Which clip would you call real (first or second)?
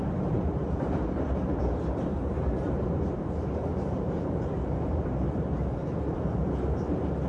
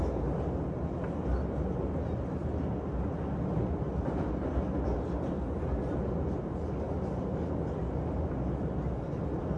second